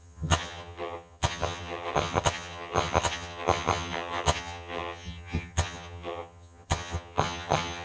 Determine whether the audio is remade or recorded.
remade